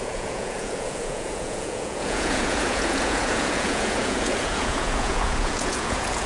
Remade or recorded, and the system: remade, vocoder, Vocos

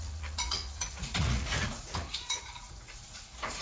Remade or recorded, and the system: remade, vocoder, Vocos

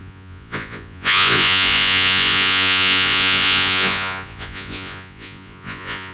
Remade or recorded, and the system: remade, vocoder, Vocos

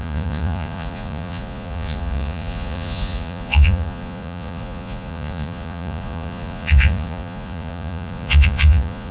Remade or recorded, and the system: remade, vocoder, Vocos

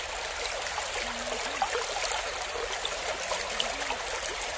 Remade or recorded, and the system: recorded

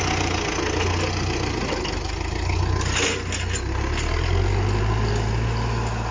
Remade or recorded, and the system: recorded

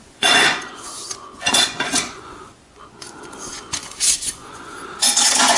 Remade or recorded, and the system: remade, vocoder, Vocos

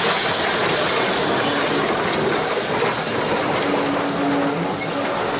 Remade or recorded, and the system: recorded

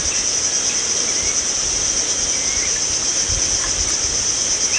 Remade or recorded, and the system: recorded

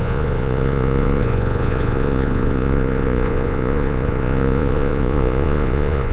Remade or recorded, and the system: remade, vocoder, Vocos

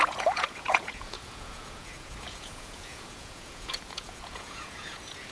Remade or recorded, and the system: remade, vocoder, Vocos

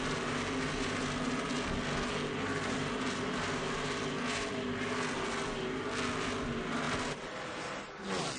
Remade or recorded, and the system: recorded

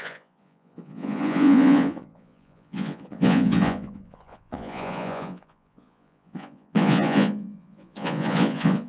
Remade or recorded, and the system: remade, vocoder, Vocos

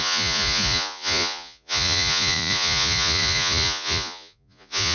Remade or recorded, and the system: remade, vocoder, Vocos